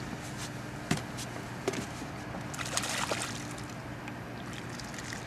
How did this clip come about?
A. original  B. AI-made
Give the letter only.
A